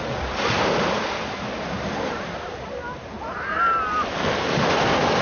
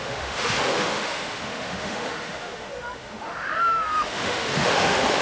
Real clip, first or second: first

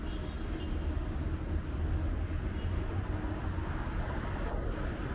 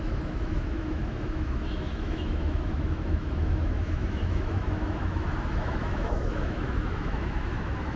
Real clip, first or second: first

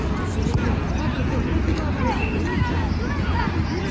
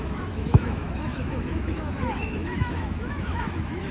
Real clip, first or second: first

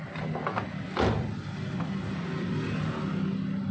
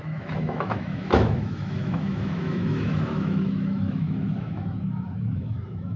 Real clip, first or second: first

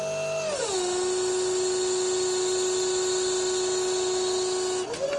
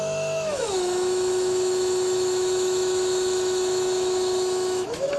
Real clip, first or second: first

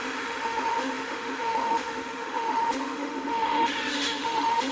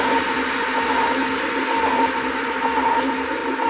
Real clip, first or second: second